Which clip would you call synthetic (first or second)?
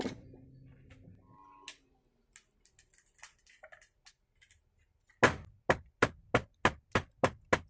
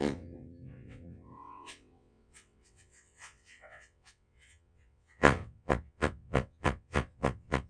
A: second